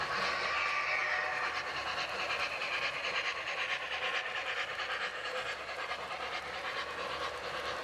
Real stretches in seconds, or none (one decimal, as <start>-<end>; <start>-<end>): 0.0-7.8